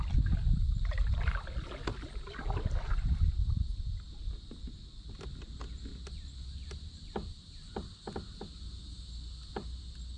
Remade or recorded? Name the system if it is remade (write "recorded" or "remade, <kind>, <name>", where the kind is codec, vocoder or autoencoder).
recorded